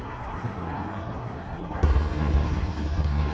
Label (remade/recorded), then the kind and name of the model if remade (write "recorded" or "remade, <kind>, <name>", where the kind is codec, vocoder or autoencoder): remade, codec, SNAC